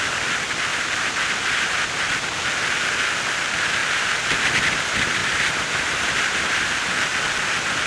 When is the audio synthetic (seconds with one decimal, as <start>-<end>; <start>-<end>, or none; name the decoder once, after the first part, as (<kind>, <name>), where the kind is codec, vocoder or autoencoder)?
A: 0.7-1.9 (vocoder, BigVGAN v2); 5.2-6.9